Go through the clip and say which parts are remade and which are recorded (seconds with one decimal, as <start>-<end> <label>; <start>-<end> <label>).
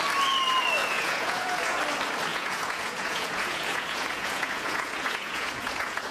0.0-0.8 recorded; 0.8-1.8 remade; 1.8-2.3 recorded; 2.3-6.1 remade